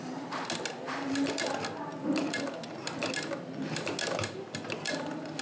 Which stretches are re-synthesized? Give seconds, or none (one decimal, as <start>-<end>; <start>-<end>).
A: none